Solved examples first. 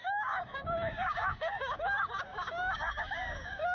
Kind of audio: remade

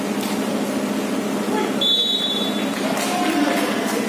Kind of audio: recorded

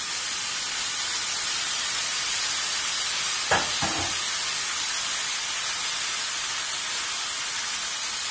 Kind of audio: recorded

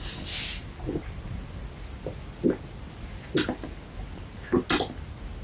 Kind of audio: recorded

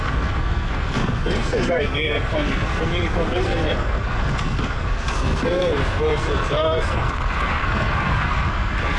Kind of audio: remade